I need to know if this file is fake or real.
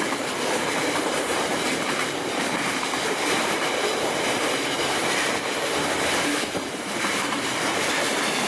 fake